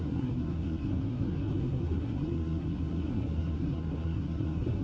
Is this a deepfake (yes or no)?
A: yes